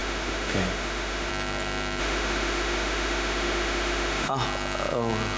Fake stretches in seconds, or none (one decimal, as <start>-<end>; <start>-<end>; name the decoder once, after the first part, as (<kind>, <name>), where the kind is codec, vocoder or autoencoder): 0.0-1.3 (autoencoder, DAC-VAE); 2.0-4.3